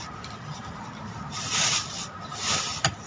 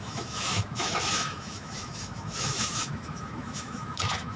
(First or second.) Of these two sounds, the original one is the first